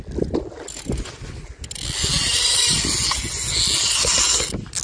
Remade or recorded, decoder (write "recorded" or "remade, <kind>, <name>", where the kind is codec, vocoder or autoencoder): recorded